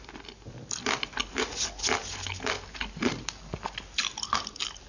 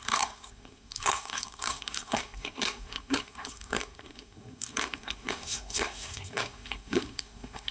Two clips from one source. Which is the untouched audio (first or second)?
first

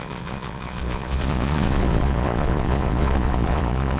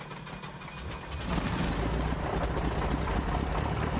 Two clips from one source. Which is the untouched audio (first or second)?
second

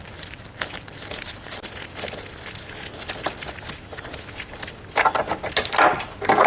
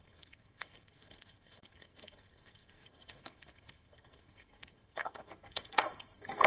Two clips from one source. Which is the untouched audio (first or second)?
first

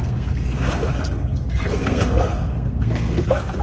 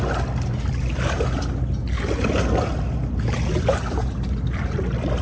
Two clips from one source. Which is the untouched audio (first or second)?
second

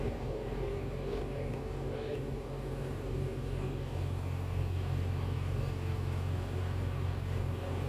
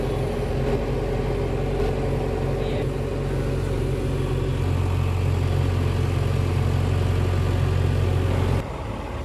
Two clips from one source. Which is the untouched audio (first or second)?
second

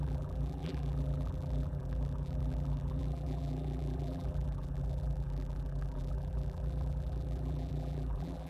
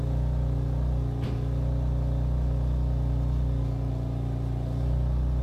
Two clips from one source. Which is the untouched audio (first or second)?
second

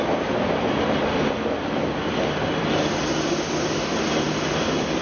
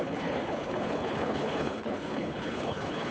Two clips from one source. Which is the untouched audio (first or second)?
first